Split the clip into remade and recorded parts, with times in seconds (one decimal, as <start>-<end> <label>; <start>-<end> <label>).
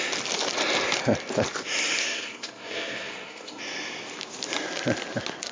0.0-2.0 recorded; 2.0-3.6 remade; 3.6-5.5 recorded